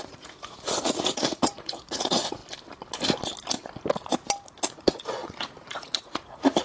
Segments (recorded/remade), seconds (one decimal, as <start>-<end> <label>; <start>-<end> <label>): 0.0-2.4 remade; 2.4-4.7 recorded; 4.7-6.6 remade